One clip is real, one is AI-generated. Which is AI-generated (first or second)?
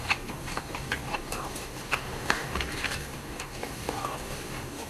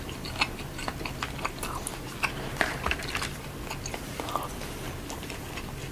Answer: first